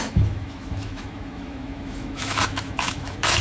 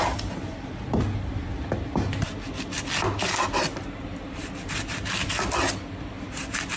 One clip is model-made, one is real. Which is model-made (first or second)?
first